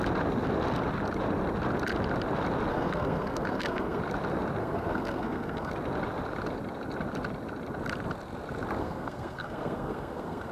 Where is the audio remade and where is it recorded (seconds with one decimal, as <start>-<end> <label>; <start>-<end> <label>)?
0.0-2.7 recorded; 2.7-4.0 remade; 4.0-4.6 recorded; 4.6-5.7 remade; 5.7-8.8 recorded; 8.8-10.5 remade